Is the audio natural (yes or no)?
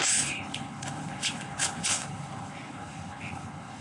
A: no